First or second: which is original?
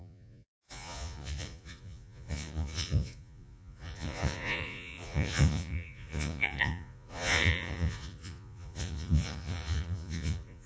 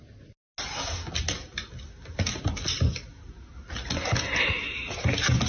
second